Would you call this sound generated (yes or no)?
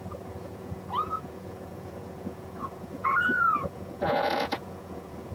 yes